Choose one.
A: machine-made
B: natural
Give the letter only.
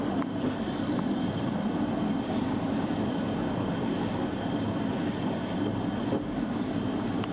B